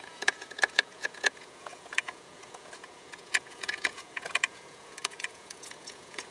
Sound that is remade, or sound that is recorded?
remade